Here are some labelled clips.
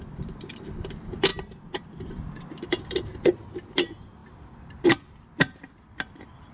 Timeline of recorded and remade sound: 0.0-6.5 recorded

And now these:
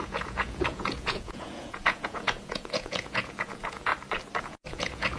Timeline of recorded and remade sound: 0.0-3.9 remade; 3.9-4.4 recorded; 4.4-5.2 remade

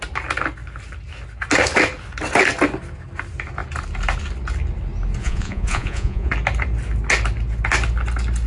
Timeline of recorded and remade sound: 0.0-5.2 recorded; 5.2-6.3 remade; 6.3-8.5 recorded

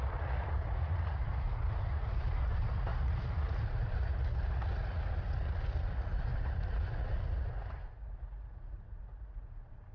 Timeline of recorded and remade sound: 0.0-9.9 remade